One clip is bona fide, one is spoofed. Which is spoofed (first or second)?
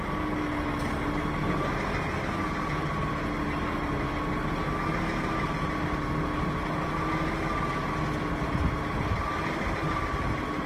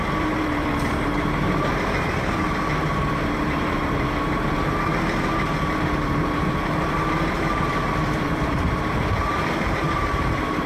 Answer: second